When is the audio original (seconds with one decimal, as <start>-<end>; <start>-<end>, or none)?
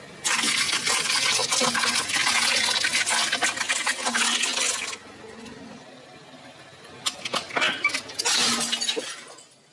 0.0-9.7